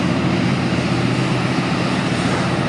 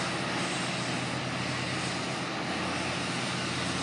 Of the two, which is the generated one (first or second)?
first